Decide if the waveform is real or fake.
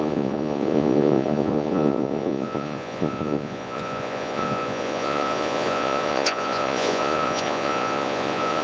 fake